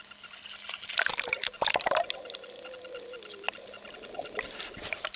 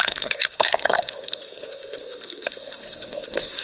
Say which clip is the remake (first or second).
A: second